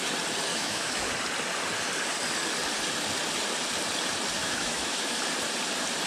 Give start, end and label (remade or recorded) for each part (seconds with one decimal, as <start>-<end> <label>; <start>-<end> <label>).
0.0-0.5 recorded; 0.5-1.1 remade; 1.1-4.4 recorded; 4.4-5.2 remade; 5.2-6.1 recorded